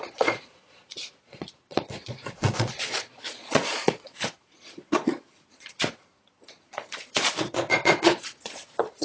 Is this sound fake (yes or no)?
yes